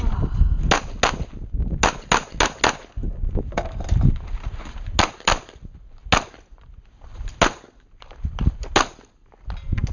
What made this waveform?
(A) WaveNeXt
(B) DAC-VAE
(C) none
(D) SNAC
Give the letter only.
C